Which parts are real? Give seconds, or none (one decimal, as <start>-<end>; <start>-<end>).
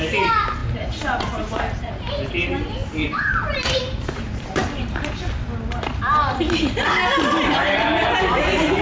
0.0-2.8; 5.3-8.8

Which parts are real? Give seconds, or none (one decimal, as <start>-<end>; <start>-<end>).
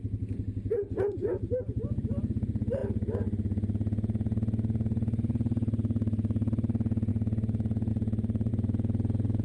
0.0-7.9; 8.5-9.4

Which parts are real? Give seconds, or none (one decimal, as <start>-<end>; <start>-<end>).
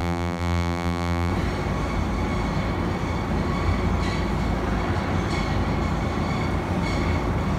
1.3-7.6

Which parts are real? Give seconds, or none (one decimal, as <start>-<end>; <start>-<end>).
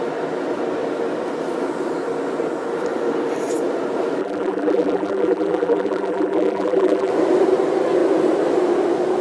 0.0-4.2; 7.1-9.2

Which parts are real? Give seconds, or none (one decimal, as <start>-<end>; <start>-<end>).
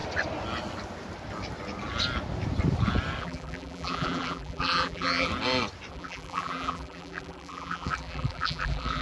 0.0-3.2; 5.3-5.9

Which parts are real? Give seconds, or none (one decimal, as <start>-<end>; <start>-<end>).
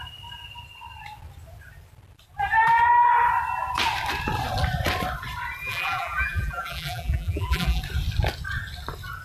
0.0-5.6; 7.8-9.2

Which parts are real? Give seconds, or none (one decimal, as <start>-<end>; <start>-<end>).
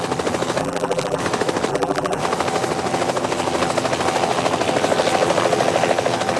0.0-0.6; 1.2-1.7; 2.2-6.4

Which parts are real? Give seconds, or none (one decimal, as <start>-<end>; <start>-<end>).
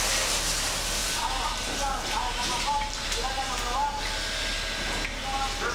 0.0-1.0; 4.0-5.7